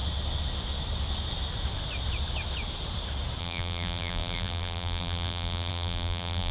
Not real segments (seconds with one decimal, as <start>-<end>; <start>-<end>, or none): 3.4-6.5

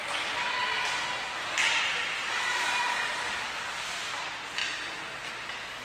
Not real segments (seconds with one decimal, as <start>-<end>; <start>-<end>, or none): none

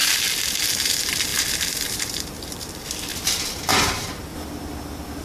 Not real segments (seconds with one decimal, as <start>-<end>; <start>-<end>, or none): 0.6-3.1; 3.7-4.3

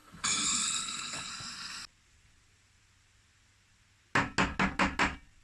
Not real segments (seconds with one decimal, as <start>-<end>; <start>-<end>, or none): 0.0-1.3

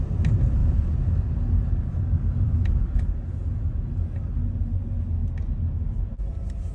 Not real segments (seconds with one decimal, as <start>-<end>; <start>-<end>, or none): none

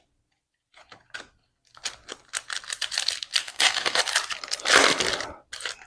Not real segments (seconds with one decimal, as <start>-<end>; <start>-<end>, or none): 3.4-4.0

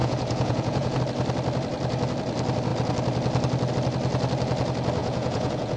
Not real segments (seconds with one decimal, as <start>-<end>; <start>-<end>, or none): 0.0-1.0; 5.0-5.8

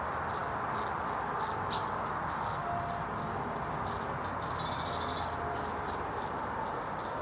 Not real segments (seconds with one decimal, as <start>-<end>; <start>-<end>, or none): none